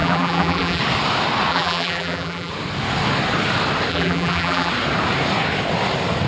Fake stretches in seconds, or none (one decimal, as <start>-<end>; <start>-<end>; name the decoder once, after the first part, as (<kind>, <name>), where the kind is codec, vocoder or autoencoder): 0.0-0.8 (vocoder, BigVGAN v2); 1.5-2.5; 3.9-4.7

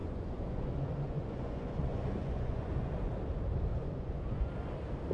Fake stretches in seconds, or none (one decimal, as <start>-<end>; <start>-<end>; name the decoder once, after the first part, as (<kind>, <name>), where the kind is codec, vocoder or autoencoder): 0.0-3.1 (vocoder, Vocos); 3.7-4.5

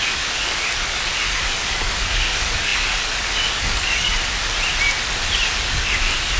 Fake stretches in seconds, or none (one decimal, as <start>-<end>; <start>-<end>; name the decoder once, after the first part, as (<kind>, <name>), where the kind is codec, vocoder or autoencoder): 0.0-4.1 (codec, DAC); 5.6-6.4

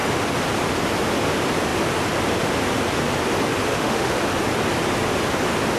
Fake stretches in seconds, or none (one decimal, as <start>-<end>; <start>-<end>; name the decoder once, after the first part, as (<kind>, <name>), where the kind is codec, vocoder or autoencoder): 3.7-4.2 (autoencoder, DAC-VAE)

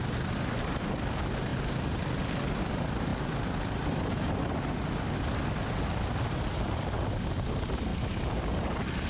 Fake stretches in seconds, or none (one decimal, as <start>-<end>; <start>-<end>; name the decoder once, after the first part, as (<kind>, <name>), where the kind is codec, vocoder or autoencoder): none

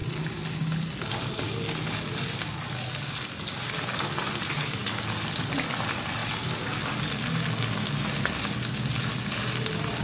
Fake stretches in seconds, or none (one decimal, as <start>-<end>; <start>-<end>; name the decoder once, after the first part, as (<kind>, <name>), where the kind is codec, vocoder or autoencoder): none